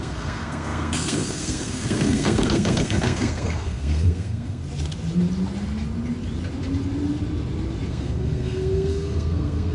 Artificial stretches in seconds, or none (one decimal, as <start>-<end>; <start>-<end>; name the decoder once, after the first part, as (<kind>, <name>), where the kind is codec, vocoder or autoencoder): 0.0-4.6 (codec, SNAC); 7.9-9.7

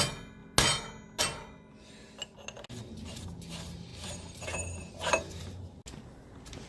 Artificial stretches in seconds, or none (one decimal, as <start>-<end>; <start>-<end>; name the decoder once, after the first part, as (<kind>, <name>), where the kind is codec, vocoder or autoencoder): none

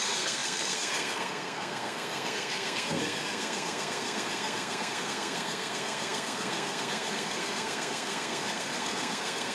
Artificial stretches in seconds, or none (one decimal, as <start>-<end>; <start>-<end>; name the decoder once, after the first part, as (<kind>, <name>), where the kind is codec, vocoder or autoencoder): 0.0-9.5 (codec, SNAC)

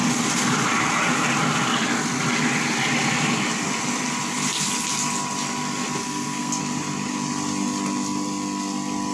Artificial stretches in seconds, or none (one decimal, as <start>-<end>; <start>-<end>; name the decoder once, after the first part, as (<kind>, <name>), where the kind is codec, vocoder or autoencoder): 6.0-6.6 (codec, SNAC)

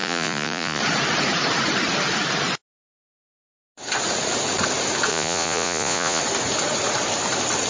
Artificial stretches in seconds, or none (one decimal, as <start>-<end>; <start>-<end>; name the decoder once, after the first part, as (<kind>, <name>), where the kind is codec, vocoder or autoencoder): 0.0-0.8 (vocoder, Vocos); 5.1-6.2